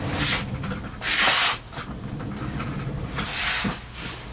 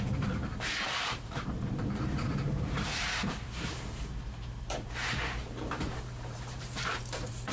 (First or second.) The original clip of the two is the first